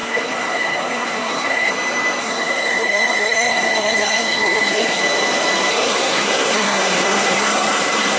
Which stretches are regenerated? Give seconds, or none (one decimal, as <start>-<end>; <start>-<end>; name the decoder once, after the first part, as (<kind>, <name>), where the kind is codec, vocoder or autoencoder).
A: 0.0-1.7 (codec, SNAC); 2.2-5.0; 5.7-8.2